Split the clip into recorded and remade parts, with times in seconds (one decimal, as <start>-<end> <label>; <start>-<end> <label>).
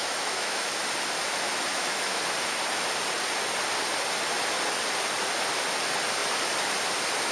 0.0-0.7 remade; 0.7-1.7 recorded; 1.7-2.2 remade; 2.2-7.3 recorded